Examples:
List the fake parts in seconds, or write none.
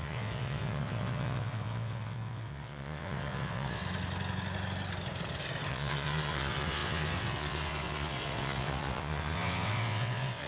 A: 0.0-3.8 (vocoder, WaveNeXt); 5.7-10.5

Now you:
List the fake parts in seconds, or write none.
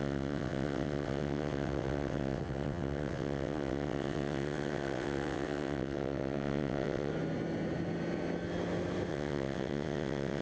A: 0.0-7.1 (vocoder, WaveNeXt); 9.1-10.4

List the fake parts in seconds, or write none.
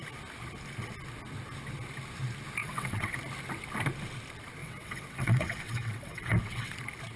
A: 2.6-3.1 (vocoder, WaveNeXt); 4.6-6.7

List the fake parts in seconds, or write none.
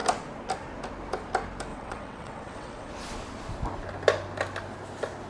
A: 1.7-2.9 (vocoder, WaveNeXt)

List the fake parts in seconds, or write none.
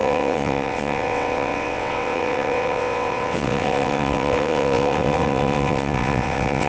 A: 0.0-6.7 (vocoder, WaveNeXt)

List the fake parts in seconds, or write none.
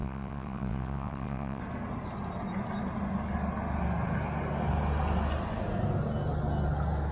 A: 0.0-1.6 (vocoder, WaveNeXt)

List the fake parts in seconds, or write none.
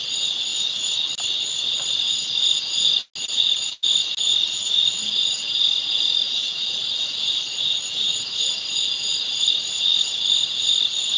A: none